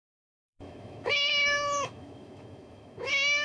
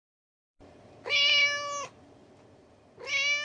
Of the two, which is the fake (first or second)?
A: first